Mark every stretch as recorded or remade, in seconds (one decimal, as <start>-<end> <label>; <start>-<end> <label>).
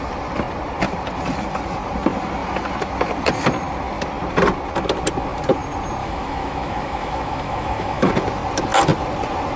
0.0-6.0 recorded; 6.0-8.1 remade; 8.1-9.6 recorded